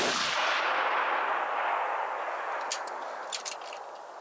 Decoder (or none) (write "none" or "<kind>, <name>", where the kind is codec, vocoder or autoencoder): none